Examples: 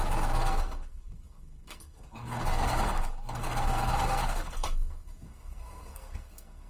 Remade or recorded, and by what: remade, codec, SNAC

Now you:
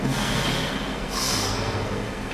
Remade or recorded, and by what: remade, codec, SNAC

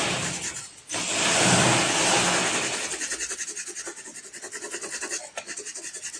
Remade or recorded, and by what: recorded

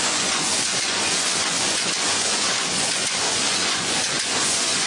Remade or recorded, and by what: remade, vocoder, Vocos